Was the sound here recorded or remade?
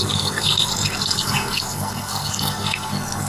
remade